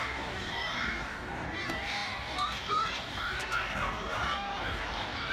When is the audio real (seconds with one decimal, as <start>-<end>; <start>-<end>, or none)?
none